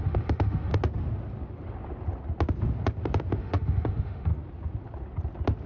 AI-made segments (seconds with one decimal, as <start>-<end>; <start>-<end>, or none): 0.0-0.7; 3.4-4.3

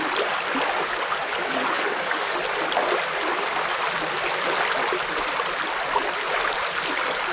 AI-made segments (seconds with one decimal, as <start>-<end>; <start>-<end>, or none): 1.4-2.3

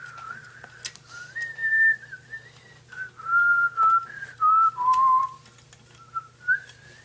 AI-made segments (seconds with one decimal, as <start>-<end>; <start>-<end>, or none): none

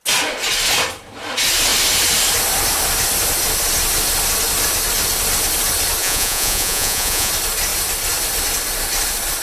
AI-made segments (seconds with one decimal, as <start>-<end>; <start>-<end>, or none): 6.0-7.3

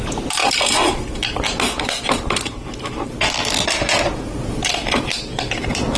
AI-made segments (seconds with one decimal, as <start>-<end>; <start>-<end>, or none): none

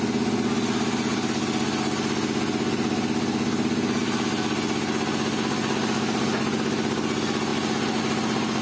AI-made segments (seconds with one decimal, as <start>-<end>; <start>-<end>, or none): none

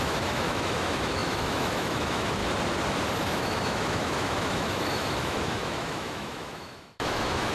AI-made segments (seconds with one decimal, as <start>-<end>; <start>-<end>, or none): 0.0-2.4; 3.2-7.5

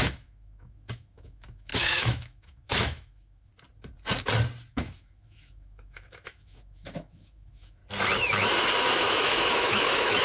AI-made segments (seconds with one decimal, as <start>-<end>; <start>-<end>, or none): 0.0-3.5; 4.7-7.8; 8.8-10.2